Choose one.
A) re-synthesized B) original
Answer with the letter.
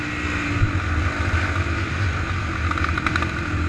B